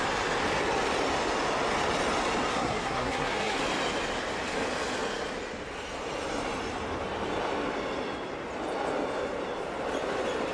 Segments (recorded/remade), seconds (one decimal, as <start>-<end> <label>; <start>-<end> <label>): 0.0-2.5 recorded; 2.5-3.6 remade; 3.6-10.5 recorded